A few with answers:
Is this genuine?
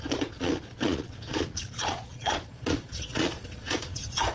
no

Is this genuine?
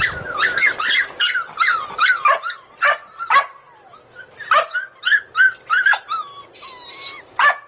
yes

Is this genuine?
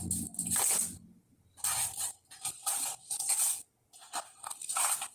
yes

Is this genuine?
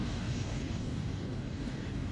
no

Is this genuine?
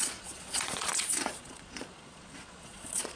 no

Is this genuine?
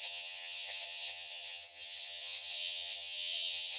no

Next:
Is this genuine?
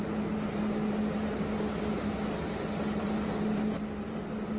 yes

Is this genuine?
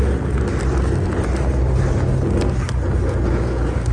yes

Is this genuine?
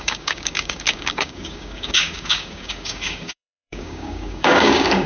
no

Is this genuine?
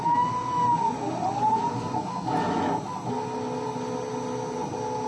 yes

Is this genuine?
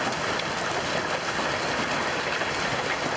yes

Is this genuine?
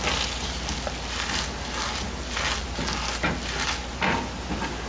yes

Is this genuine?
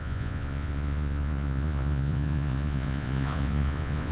no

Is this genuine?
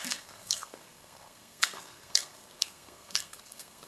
no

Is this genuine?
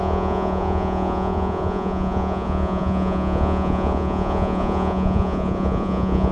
no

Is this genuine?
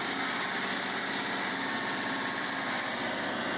yes